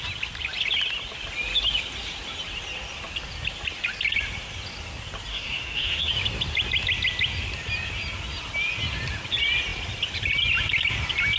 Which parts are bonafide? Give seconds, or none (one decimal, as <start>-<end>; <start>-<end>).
0.0-5.3; 6.1-11.4